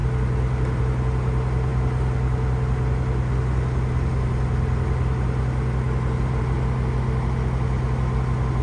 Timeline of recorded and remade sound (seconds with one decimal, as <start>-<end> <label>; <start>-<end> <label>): 0.0-8.6 recorded